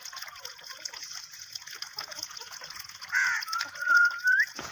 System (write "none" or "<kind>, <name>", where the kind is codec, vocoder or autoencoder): vocoder, Vocos